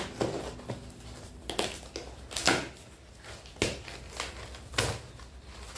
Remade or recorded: recorded